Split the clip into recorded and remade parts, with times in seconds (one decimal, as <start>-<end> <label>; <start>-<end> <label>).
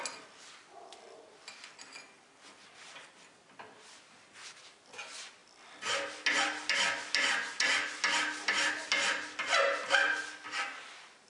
0.0-11.3 recorded